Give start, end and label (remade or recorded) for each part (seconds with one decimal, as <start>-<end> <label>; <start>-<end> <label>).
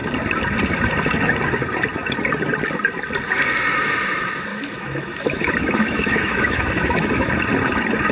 0.0-4.5 recorded; 4.5-7.3 remade; 7.3-8.1 recorded